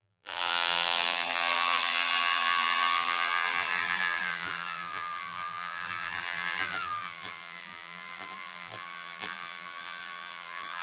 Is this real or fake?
fake